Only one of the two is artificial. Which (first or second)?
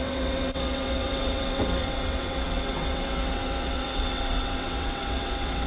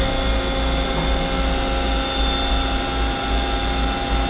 first